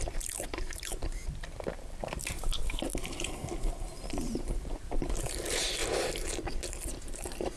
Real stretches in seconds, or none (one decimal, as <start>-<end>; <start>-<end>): 1.2-1.7; 5.8-7.0